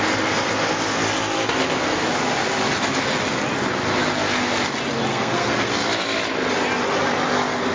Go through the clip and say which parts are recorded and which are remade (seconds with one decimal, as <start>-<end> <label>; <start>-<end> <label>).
0.0-5.1 recorded; 5.1-5.7 remade; 5.7-7.7 recorded